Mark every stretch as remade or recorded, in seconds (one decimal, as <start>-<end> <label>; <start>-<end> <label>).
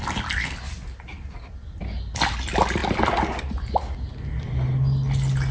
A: 0.0-5.5 recorded